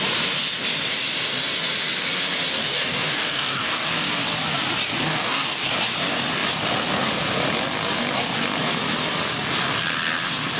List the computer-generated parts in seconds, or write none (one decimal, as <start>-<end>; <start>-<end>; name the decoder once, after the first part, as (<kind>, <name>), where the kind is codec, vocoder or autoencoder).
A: 2.6-3.9 (codec, DAC); 5.0-5.7